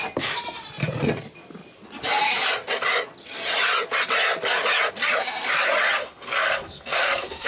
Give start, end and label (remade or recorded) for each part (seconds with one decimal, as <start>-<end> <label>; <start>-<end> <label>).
0.0-6.0 recorded; 6.0-7.5 remade